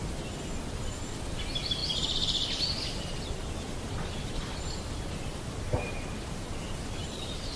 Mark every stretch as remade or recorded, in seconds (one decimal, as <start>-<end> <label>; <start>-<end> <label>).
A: 0.0-7.0 recorded; 7.0-7.6 remade